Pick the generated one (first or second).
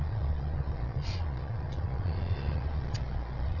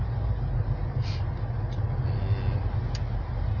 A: first